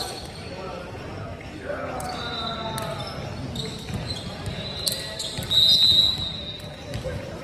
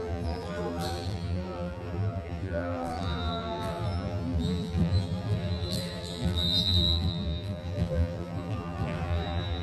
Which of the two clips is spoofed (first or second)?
second